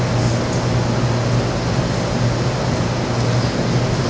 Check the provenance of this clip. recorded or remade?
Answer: recorded